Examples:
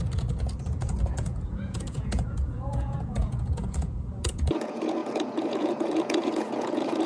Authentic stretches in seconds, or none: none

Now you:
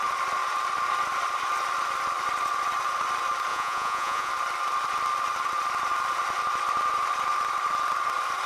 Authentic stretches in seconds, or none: 0.0-3.5; 4.3-8.5

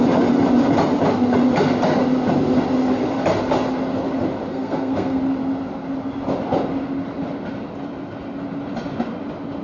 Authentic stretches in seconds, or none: 0.0-4.5; 5.2-9.6